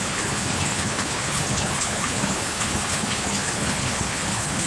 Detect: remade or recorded remade